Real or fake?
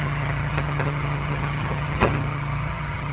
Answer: fake